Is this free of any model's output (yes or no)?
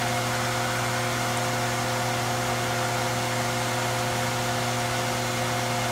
yes